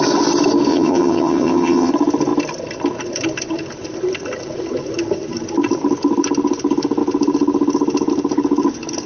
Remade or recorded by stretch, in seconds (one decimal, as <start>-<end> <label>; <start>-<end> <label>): 0.0-0.7 recorded; 0.7-1.9 remade; 1.9-9.1 recorded